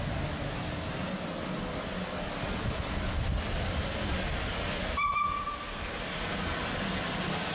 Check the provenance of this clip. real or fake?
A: real